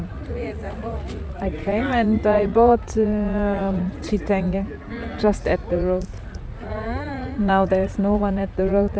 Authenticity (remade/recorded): remade